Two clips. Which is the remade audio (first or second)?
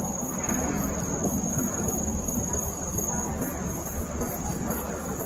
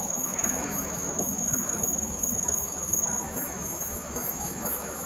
second